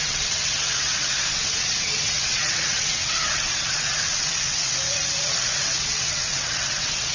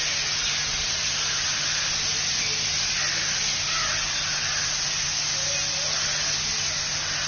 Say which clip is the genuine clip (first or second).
second